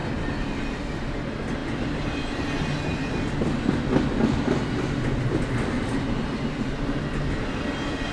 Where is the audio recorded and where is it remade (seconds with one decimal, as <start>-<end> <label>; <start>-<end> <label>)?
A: 0.0-8.1 recorded